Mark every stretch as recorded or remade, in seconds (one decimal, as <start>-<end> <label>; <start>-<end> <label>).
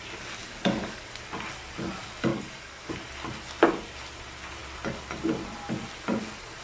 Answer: 0.0-0.4 recorded; 0.4-1.1 remade; 1.1-2.3 recorded; 2.3-2.9 remade; 2.9-6.6 recorded